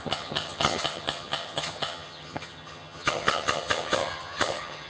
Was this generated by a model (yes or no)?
yes